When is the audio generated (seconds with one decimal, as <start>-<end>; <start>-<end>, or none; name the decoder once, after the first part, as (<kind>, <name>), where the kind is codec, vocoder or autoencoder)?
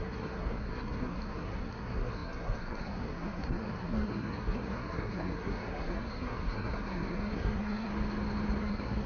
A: 0.0-7.9 (codec, SNAC); 8.6-9.1